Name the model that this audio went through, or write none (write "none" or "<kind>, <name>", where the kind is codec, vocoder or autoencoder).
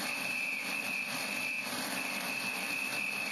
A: vocoder, BigVGAN v2